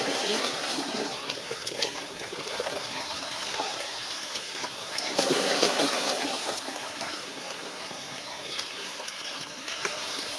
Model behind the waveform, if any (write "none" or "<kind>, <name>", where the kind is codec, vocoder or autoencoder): codec, SNAC